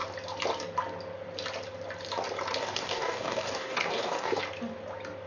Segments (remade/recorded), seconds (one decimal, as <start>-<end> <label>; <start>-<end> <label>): 0.0-2.6 recorded; 2.6-4.4 remade; 4.4-5.3 recorded